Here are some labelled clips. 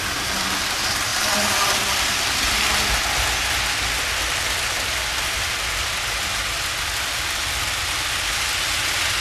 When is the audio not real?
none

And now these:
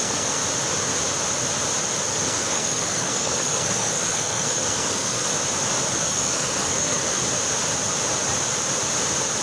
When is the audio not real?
0.0-0.4 (codec, SNAC); 2.1-5.3; 5.9-7.2

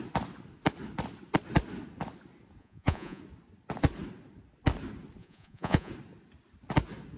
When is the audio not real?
2.6-3.2 (vocoder, Vocos); 5.2-5.9